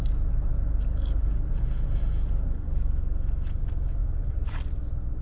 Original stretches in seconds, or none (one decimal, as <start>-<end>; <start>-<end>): 0.0-4.0; 4.7-5.2